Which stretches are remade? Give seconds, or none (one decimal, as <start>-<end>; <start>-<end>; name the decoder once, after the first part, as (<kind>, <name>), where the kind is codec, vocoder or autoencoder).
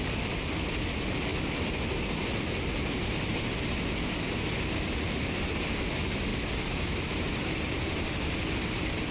6.3-8.2 (vocoder, BigVGAN v2)